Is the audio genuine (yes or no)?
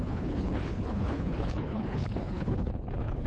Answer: no